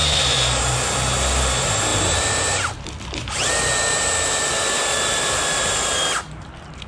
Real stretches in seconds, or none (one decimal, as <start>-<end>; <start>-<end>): 0.6-1.9; 6.0-6.9